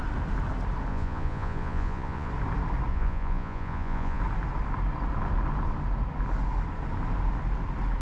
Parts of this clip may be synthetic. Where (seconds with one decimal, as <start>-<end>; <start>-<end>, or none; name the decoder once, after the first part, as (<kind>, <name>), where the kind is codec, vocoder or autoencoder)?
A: 0.9-2.3 (vocoder, Vocos); 2.9-4.2